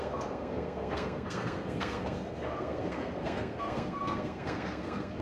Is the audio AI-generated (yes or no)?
yes